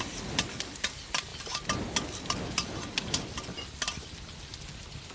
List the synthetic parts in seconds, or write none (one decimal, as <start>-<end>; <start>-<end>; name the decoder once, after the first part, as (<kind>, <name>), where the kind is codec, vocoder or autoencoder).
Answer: none